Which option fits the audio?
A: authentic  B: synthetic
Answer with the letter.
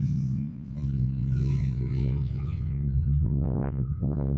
B